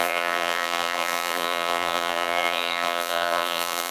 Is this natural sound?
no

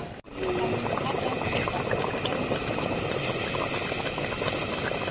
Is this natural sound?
yes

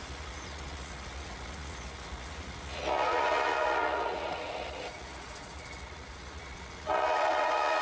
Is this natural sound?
no